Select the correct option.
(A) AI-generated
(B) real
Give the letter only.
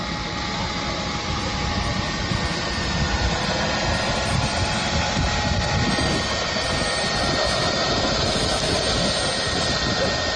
B